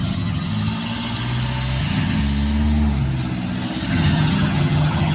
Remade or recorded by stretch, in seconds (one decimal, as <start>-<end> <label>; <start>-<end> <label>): 0.0-0.5 remade; 0.5-1.8 recorded; 1.8-2.2 remade; 2.2-3.9 recorded; 3.9-5.1 remade